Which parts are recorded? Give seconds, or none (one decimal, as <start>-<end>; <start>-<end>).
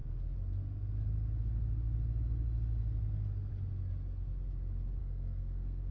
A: 0.0-5.0